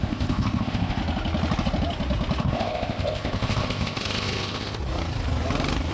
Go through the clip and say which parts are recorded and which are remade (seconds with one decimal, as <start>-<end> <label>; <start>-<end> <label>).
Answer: 0.0-1.0 remade; 1.0-2.4 recorded; 2.4-4.8 remade; 4.8-5.9 recorded